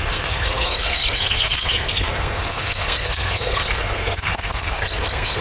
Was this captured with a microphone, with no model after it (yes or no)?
no